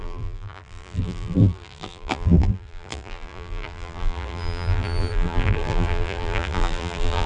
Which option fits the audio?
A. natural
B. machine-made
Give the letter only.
B